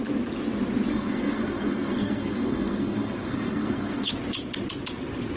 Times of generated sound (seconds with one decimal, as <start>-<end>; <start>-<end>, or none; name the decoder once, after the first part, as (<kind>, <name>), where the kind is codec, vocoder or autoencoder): 0.9-4.1 (codec, SNAC)